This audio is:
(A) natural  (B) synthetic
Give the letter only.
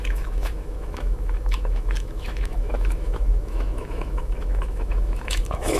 B